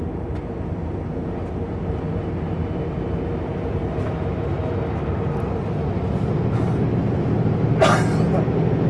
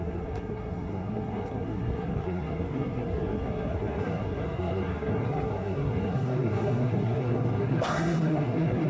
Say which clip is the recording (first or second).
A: first